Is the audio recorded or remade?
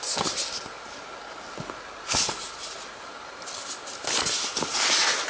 recorded